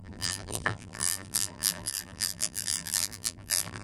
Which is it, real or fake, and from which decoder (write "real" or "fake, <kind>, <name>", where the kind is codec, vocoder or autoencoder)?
fake, vocoder, BigVGAN v2